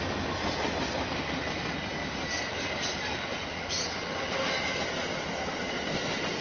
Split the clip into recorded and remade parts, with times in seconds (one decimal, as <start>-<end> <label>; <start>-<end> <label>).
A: 0.0-3.3 recorded; 3.3-3.9 remade; 3.9-6.4 recorded